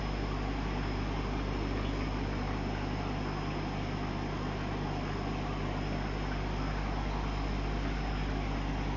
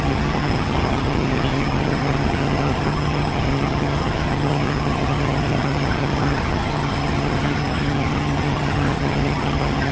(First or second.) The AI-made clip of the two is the second